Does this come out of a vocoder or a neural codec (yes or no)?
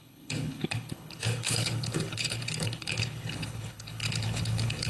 yes